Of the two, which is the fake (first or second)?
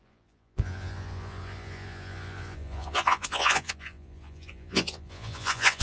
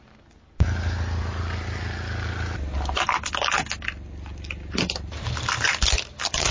first